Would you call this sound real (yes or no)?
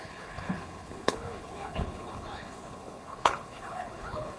no